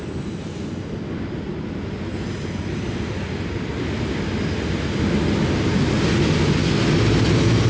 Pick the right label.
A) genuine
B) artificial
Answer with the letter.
A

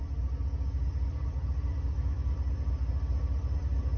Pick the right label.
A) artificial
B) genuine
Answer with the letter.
B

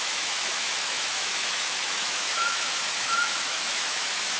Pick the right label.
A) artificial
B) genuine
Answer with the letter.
A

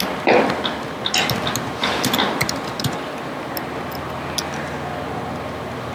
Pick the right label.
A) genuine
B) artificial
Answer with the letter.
A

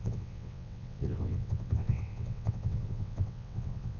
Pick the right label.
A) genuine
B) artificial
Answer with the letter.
B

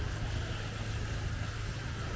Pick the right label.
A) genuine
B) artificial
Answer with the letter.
A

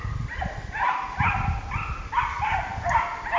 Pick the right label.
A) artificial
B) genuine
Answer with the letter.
B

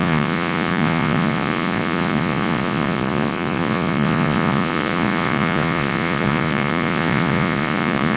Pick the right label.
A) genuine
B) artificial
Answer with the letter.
B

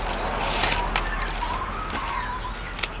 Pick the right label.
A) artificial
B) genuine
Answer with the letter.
B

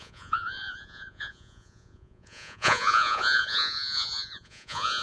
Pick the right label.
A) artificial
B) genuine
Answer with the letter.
A